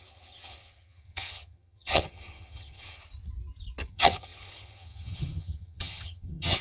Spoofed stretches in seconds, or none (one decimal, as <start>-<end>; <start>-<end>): 0.0-3.0; 3.9-6.6